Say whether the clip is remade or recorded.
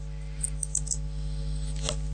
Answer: recorded